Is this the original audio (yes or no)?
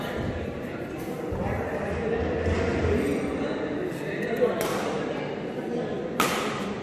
yes